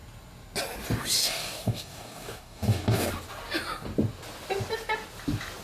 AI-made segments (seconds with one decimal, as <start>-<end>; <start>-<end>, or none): 1.2-3.1